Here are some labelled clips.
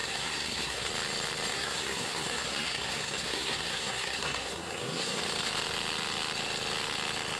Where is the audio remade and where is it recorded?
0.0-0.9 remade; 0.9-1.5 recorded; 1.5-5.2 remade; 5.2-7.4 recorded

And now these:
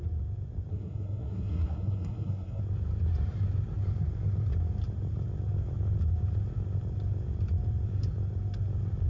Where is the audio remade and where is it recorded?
0.0-0.7 recorded; 0.7-2.6 remade; 2.6-9.1 recorded

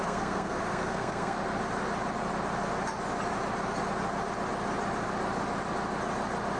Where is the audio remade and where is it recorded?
0.0-1.4 remade; 1.4-6.6 recorded